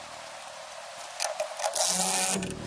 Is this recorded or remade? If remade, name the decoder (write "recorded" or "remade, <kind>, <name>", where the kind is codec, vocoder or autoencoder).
recorded